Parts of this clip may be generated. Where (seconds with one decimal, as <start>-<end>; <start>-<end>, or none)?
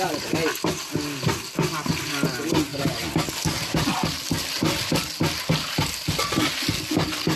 none